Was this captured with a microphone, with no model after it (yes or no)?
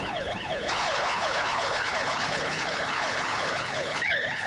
no